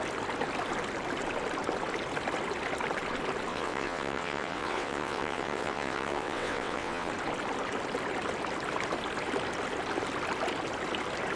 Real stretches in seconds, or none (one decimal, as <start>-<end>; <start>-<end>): 0.0-3.5; 7.1-11.4